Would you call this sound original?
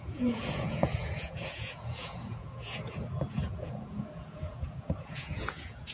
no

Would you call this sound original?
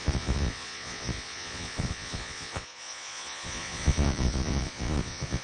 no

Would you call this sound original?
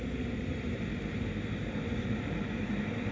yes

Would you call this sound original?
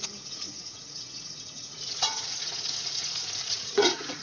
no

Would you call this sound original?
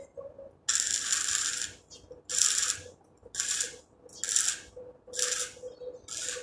yes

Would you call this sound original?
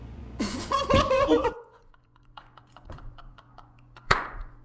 no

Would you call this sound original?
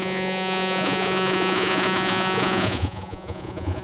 no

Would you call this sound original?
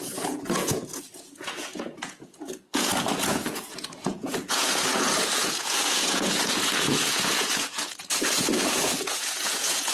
no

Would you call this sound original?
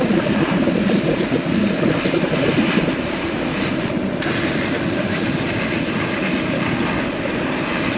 yes